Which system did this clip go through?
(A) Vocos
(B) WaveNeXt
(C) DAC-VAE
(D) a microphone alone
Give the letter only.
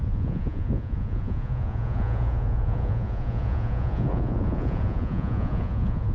A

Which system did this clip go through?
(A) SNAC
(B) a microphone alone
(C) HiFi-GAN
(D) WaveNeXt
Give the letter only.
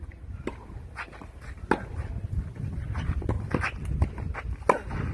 B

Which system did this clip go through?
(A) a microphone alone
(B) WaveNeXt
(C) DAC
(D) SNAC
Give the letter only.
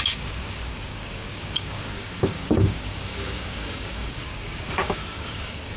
C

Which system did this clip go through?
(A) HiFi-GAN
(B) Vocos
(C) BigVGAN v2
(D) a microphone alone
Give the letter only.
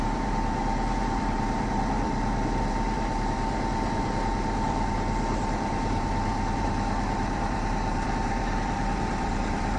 C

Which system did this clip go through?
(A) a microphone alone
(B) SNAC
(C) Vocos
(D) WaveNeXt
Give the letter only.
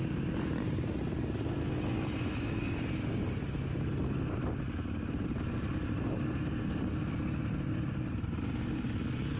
A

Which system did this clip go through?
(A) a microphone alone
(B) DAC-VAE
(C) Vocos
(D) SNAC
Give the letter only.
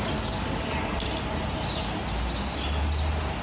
A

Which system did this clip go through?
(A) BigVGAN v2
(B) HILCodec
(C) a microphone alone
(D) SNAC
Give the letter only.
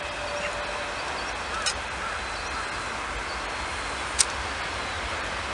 C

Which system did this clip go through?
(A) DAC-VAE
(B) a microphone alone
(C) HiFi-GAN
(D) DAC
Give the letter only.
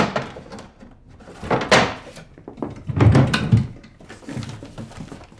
B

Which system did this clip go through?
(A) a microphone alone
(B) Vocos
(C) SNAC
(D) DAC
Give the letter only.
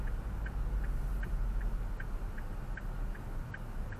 A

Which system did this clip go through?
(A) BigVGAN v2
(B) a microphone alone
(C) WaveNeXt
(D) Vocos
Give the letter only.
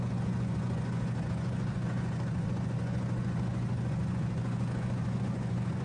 D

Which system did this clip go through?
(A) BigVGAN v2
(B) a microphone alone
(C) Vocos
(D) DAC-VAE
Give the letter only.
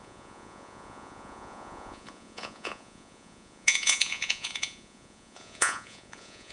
C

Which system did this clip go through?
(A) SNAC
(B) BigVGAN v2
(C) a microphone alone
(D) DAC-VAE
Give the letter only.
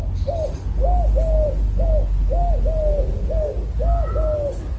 C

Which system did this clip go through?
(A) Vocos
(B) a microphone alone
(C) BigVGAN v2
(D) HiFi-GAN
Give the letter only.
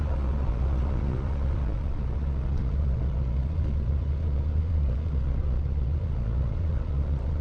A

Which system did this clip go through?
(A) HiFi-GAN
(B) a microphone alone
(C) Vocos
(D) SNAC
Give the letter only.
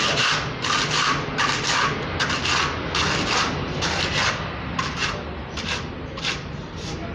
B